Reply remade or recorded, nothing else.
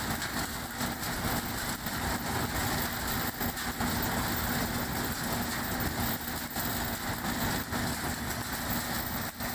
recorded